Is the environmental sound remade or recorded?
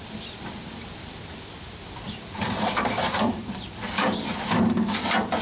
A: remade